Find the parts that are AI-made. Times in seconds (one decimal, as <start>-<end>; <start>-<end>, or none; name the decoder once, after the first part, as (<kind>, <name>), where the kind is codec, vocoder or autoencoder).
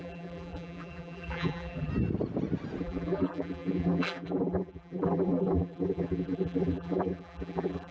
0.0-1.9 (vocoder, BigVGAN v2); 2.8-7.9